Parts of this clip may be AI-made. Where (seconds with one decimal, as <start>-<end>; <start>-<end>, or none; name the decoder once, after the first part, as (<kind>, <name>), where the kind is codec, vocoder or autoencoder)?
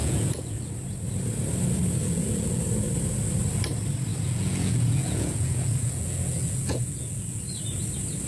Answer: 0.0-0.7 (vocoder, Vocos); 2.0-2.6; 4.1-7.4